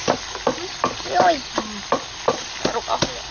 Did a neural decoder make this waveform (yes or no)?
no